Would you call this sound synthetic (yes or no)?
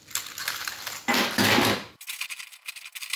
no